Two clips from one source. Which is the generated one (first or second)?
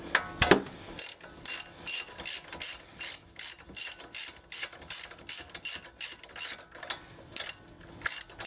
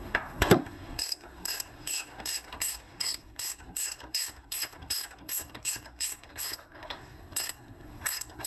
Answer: second